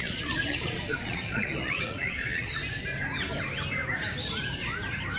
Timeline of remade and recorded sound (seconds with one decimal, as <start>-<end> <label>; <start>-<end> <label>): 0.0-2.6 remade; 2.6-5.2 recorded